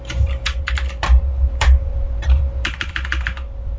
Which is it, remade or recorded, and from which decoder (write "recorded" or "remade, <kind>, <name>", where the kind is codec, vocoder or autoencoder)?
remade, vocoder, BigVGAN v2